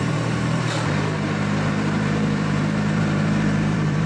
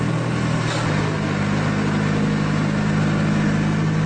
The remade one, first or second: first